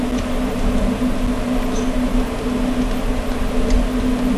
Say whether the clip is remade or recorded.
recorded